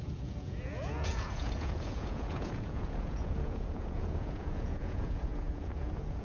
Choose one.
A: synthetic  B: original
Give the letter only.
A